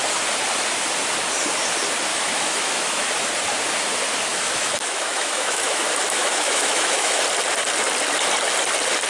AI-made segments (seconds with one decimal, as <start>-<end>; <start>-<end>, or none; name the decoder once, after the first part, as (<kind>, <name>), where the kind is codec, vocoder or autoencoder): 2.1-3.1 (autoencoder, DAC-VAE); 4.3-7.2